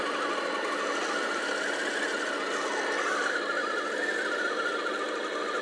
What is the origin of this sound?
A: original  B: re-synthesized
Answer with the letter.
A